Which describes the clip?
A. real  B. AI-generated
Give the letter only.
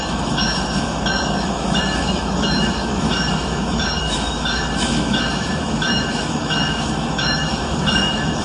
B